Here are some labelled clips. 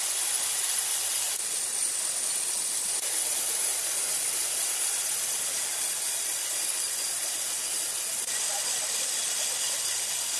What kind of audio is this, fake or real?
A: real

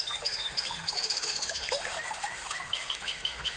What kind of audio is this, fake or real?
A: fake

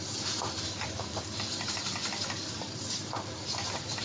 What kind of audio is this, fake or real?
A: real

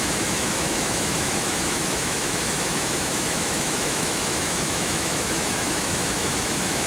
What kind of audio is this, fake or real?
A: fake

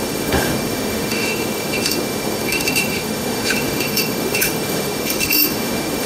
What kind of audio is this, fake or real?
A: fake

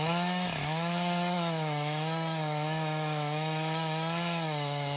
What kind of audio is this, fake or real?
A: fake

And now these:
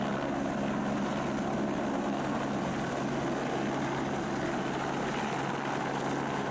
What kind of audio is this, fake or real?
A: real